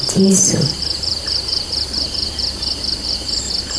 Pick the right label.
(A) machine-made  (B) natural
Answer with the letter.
A